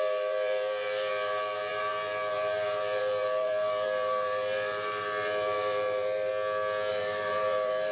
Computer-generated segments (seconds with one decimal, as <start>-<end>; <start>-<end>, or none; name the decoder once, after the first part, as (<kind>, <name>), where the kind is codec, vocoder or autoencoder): 0.0-6.3 (vocoder, BigVGAN v2); 6.9-7.9